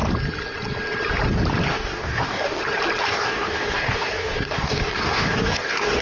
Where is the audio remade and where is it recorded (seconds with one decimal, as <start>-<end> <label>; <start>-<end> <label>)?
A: 0.0-1.7 recorded; 1.7-2.6 remade; 2.6-3.1 recorded; 3.1-6.0 remade